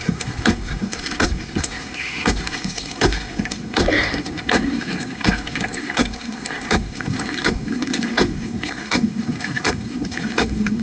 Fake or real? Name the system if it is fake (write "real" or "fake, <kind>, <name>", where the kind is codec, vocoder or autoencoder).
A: fake, codec, SNAC